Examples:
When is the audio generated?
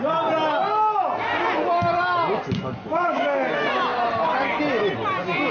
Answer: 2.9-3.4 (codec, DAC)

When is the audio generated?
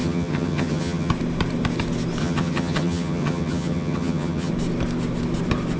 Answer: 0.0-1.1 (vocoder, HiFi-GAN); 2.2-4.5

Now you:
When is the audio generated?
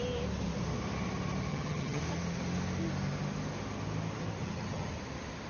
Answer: 1.5-2.0 (vocoder, HiFi-GAN); 4.4-4.9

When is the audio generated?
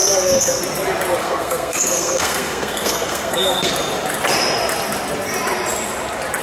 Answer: 0.0-0.6 (codec, SNAC); 1.2-3.7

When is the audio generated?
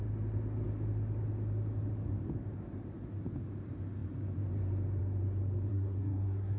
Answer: 5.7-6.6 (codec, SNAC)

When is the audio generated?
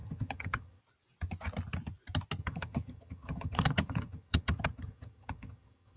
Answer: 0.0-0.8 (vocoder, HiFi-GAN); 2.4-6.0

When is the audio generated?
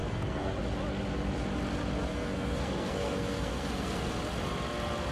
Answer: 0.0-0.6 (codec, SNAC); 2.1-4.1